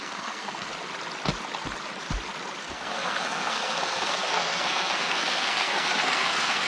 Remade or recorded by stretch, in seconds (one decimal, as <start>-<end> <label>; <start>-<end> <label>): 0.0-0.7 remade; 0.7-2.6 recorded; 2.6-6.7 remade